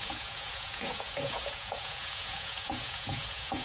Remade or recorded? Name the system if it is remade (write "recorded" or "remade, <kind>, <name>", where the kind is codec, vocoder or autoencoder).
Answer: remade, vocoder, Vocos